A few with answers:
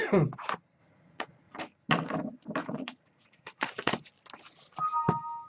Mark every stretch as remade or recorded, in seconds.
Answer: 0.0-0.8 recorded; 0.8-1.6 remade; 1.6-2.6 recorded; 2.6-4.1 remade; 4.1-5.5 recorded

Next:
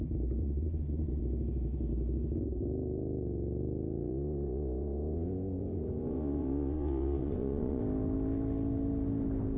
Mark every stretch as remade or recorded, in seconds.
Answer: 0.0-0.4 recorded; 0.4-1.2 remade; 1.2-4.1 recorded; 4.1-7.8 remade; 7.8-9.6 recorded

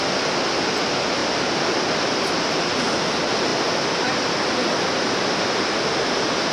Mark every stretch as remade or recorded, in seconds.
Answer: 0.0-6.5 recorded

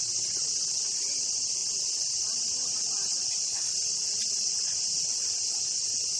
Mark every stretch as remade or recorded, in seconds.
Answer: 0.0-3.1 recorded; 3.1-3.7 remade; 3.7-6.2 recorded